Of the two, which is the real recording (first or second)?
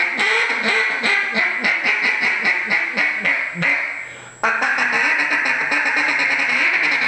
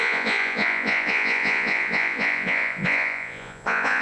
first